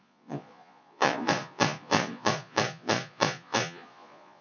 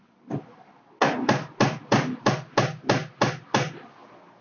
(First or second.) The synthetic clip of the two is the first